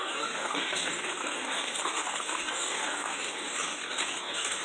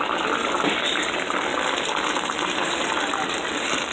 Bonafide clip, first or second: second